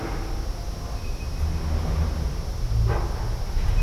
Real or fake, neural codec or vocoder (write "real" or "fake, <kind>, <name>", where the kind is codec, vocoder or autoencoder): real